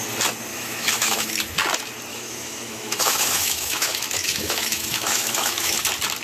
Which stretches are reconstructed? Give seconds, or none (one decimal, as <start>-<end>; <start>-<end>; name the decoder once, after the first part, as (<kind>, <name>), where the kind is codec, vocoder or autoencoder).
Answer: 0.5-1.3 (autoencoder, DAC-VAE); 2.1-5.8

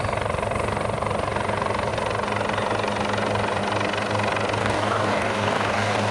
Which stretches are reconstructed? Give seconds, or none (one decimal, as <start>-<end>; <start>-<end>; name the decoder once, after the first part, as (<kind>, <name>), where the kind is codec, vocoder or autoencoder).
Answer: 4.6-6.1 (codec, DAC)